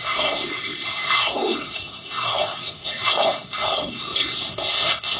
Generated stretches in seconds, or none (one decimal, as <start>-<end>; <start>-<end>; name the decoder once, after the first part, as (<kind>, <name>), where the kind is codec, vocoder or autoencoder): 0.0-5.2 (codec, SNAC)